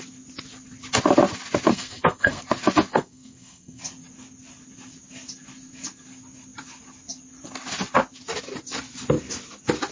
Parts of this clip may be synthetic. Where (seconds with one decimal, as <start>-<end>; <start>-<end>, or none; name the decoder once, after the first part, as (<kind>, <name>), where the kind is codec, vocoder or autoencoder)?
1.7-2.4 (codec, SNAC); 2.9-3.8